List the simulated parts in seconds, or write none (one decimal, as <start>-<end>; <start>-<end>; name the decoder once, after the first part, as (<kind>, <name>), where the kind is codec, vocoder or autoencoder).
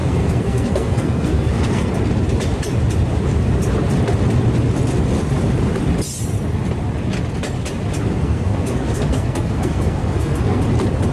0.0-1.9 (codec, SNAC); 8.1-10.6